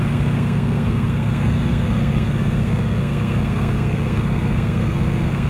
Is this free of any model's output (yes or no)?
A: no